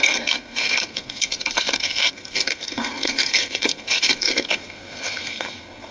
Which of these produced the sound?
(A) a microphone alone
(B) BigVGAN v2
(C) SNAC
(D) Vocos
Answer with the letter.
C